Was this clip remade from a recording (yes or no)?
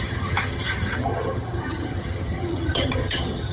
yes